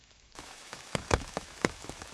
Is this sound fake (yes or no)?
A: yes